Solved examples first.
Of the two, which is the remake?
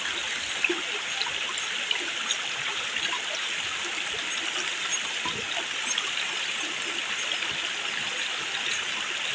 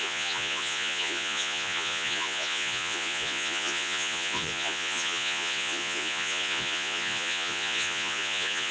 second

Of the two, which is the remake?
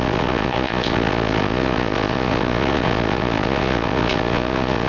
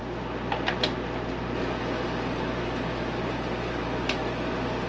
first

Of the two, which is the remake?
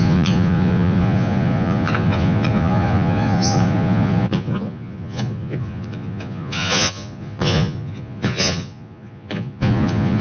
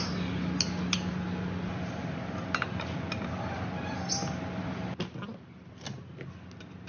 first